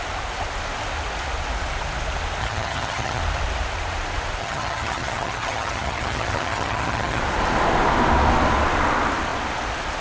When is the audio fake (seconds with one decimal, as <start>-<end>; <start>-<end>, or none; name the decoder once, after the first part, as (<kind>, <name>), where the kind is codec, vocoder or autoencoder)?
2.4-3.2 (vocoder, HiFi-GAN); 4.4-7.2